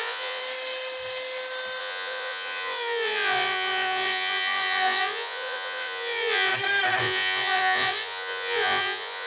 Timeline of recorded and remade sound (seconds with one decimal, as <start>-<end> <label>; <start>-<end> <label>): 0.0-0.4 remade; 0.4-1.8 recorded; 1.8-6.5 remade; 6.5-7.0 recorded; 7.0-9.3 remade